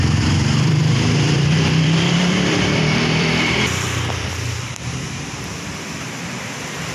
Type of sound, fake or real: fake